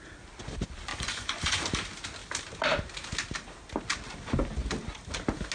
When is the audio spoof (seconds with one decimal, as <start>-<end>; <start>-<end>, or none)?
0.9-1.6